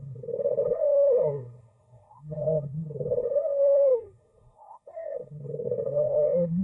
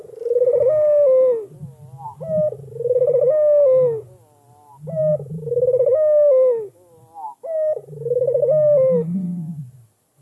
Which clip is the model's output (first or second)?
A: first